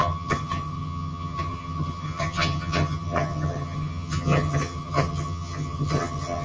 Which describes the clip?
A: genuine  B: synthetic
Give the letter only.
B